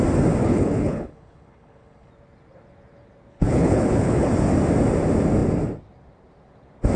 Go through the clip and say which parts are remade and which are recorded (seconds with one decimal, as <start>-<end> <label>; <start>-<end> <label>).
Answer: 0.0-0.4 recorded; 0.4-2.1 remade; 2.1-3.3 recorded; 3.3-4.3 remade; 4.3-7.0 recorded